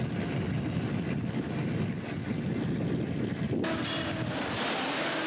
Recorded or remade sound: recorded